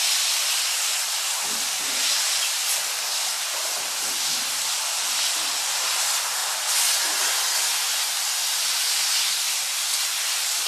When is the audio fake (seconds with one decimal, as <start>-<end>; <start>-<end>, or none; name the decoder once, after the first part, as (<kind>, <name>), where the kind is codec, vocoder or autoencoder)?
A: 0.0-2.6 (vocoder, BigVGAN v2); 3.8-6.4; 9.2-10.7